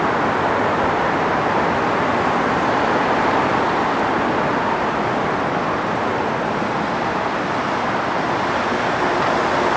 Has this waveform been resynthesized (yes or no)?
no